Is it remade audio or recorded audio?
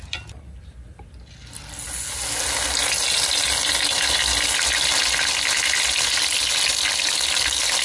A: recorded